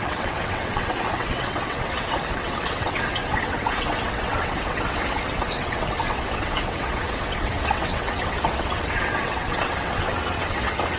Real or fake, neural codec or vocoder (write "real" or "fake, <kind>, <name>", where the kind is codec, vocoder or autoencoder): fake, vocoder, WaveNeXt